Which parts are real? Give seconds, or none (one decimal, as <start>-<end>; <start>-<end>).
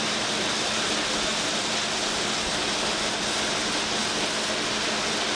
0.0-5.4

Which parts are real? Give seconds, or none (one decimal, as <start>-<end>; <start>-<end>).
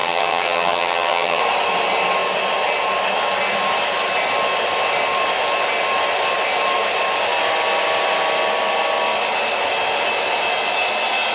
1.4-11.3